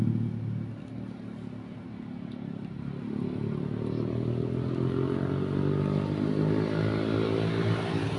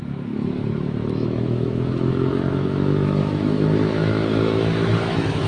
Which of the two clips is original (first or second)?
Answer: first